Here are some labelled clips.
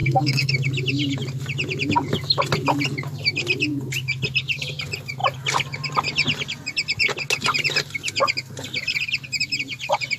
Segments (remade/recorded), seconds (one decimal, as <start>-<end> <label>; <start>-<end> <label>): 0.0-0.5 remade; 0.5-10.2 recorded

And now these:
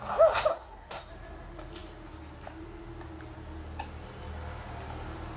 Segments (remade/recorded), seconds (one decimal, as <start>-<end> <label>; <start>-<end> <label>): 0.0-0.5 recorded; 0.5-1.1 remade; 1.1-5.4 recorded

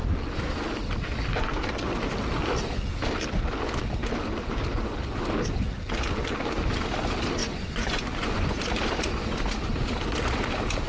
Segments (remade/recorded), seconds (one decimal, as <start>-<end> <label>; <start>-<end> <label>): 0.0-7.4 recorded; 7.4-8.6 remade; 8.6-10.9 recorded

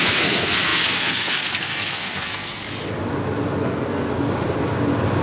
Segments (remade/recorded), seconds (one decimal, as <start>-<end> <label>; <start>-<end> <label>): 0.0-2.6 remade; 2.6-3.6 recorded; 3.6-4.1 remade; 4.1-5.2 recorded

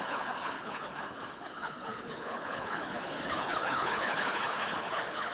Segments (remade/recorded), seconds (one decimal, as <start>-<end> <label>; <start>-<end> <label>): 0.0-5.3 remade

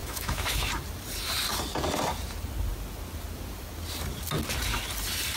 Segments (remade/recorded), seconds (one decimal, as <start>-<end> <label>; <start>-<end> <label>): 0.0-0.7 remade; 0.7-5.4 recorded

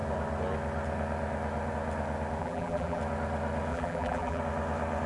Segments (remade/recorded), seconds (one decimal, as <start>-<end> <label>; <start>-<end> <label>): 0.0-2.4 recorded; 2.4-3.0 remade; 3.0-3.7 recorded; 3.7-4.4 remade; 4.4-5.1 recorded